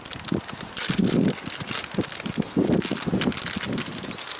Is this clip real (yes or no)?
yes